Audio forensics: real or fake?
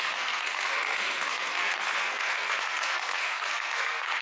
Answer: fake